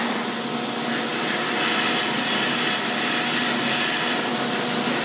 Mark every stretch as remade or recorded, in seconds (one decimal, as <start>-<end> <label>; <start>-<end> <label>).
0.0-5.0 recorded